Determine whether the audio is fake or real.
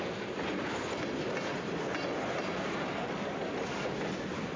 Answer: real